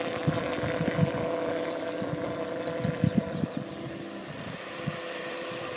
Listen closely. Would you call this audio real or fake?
fake